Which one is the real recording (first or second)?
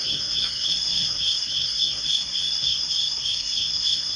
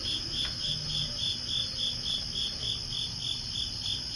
second